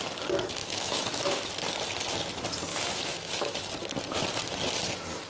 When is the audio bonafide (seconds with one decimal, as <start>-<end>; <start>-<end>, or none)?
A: 0.0-0.6; 1.5-2.7; 3.7-5.3